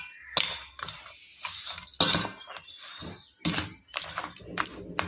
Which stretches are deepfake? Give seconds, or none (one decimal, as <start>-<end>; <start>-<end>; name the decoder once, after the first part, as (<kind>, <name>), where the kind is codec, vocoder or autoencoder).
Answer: none